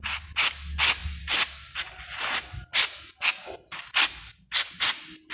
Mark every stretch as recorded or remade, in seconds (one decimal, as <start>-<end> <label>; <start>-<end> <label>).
0.0-5.3 recorded

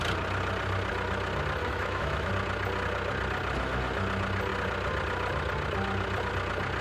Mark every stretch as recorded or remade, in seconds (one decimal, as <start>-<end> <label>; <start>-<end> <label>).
0.0-1.6 recorded; 1.6-2.3 remade; 2.3-6.8 recorded

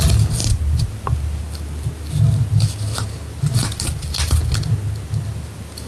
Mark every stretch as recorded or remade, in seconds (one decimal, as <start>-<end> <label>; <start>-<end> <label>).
0.0-5.9 recorded

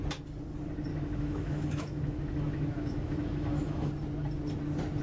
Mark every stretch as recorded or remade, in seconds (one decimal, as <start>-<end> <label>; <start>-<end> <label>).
0.0-0.9 recorded; 0.9-3.9 remade; 3.9-5.0 recorded

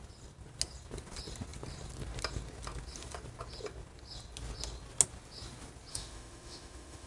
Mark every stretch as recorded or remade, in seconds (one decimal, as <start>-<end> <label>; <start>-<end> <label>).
0.0-5.9 recorded; 5.9-7.1 remade

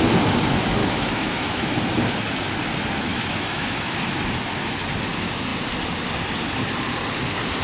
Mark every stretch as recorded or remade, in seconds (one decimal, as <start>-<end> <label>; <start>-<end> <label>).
0.0-0.8 recorded; 0.8-1.8 remade; 1.8-3.1 recorded; 3.1-4.0 remade; 4.0-7.6 recorded

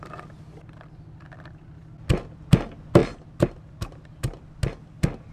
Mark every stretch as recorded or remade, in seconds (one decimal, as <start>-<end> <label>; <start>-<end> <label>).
0.0-5.3 recorded

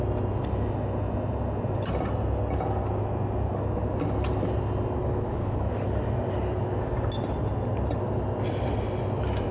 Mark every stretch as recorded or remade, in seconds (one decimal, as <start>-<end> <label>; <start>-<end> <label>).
0.0-5.0 recorded; 5.0-5.7 remade; 5.7-9.5 recorded